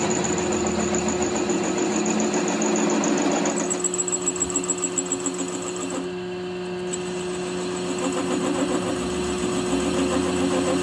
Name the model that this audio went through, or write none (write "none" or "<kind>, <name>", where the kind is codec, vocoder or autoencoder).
none